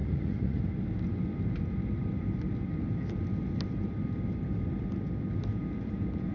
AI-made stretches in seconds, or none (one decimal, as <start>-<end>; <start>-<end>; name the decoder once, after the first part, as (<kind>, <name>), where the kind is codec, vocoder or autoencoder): 0.0-0.6 (vocoder, Vocos)